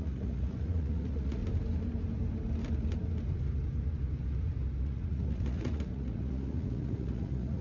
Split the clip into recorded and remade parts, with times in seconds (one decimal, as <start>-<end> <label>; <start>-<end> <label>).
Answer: 0.0-1.4 remade; 1.4-4.8 recorded; 4.8-7.6 remade